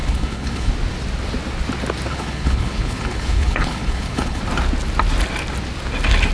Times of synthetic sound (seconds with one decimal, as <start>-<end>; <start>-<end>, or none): 0.0-0.7; 2.1-4.4